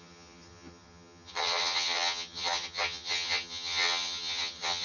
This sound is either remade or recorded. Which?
remade